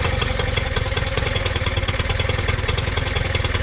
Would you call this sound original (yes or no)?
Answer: no